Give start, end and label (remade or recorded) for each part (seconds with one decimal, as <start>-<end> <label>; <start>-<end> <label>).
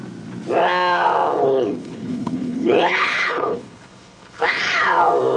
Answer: 0.0-1.4 recorded; 1.4-4.6 remade; 4.6-5.4 recorded